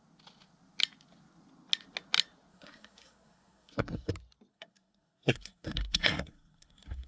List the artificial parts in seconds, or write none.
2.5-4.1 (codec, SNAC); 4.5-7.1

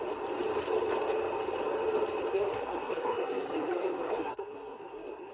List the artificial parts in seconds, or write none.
2.3-5.3 (codec, SNAC)

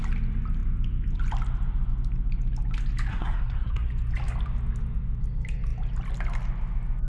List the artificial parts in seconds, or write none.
3.1-3.9 (codec, SNAC)

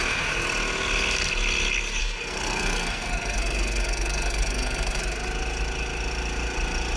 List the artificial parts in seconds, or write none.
2.0-5.0 (codec, SNAC)

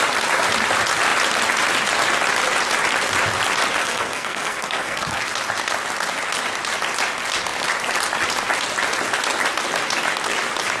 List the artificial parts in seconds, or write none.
3.8-5.2 (codec, SNAC)